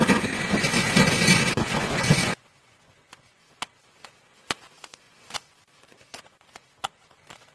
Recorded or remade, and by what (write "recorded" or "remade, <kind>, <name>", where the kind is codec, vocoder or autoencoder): remade, vocoder, Vocos